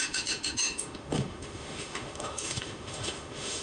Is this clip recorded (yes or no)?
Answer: no